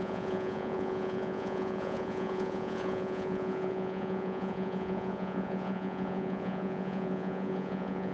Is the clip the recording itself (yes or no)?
no